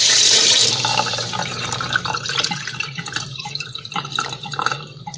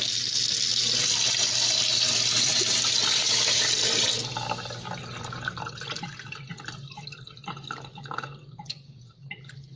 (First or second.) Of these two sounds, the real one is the second